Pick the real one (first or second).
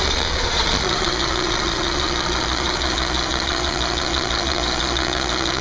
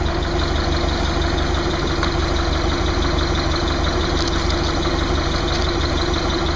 second